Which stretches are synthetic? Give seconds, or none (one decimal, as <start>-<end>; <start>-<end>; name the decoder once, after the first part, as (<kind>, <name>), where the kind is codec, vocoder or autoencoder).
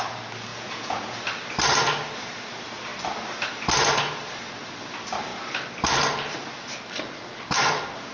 0.5-1.2 (vocoder, Vocos)